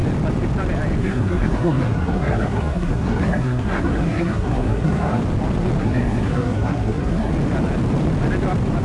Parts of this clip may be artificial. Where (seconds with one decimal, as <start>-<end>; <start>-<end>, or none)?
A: 1.0-5.2; 5.8-7.3